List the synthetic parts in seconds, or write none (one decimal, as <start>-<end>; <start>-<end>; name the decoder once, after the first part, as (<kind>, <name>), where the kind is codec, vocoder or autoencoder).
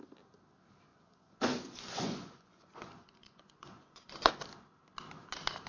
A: 0.9-4.3 (vocoder, Vocos)